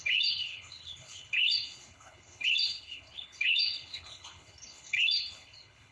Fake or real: fake